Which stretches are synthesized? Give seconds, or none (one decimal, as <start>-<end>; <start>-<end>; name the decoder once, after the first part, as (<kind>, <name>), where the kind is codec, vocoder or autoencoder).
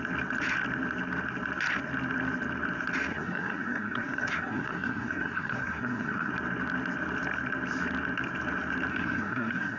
3.1-6.3 (codec, SNAC); 8.9-9.8